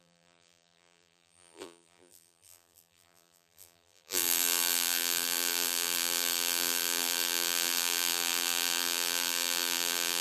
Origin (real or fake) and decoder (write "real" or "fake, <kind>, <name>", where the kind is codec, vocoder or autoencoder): fake, vocoder, BigVGAN v2